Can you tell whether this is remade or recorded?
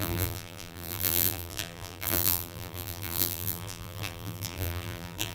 remade